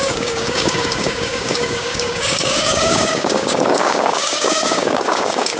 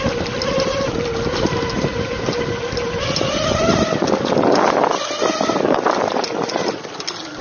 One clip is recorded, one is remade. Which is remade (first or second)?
first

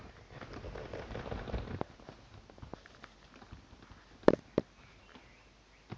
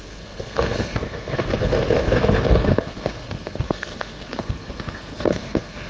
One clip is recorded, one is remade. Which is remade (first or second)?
second